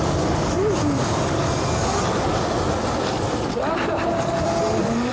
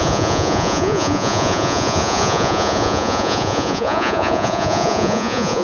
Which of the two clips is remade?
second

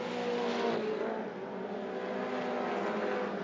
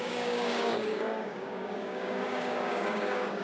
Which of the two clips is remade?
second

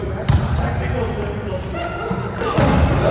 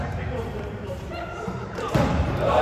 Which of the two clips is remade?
second